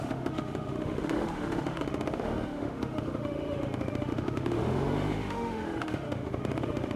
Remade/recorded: remade